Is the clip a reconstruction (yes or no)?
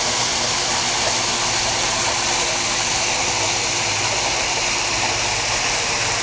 no